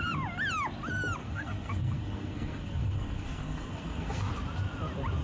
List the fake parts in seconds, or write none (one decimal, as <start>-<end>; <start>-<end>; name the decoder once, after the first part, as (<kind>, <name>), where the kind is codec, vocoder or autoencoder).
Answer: 1.2-4.3 (codec, SNAC)